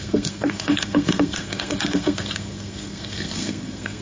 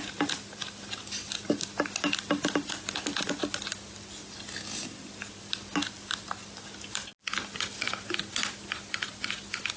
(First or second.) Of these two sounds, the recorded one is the second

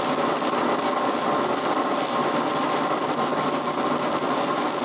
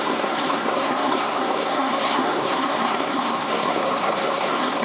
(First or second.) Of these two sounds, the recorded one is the first